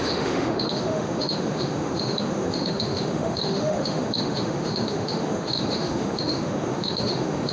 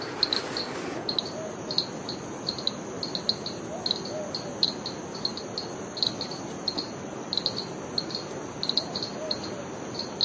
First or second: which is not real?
first